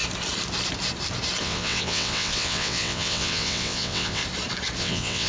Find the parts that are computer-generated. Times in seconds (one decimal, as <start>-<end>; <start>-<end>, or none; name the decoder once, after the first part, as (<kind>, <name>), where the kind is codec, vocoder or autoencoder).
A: 1.4-4.2 (vocoder, WaveNeXt); 4.8-5.3